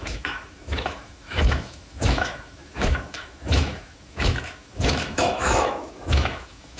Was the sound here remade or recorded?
remade